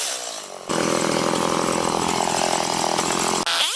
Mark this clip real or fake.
real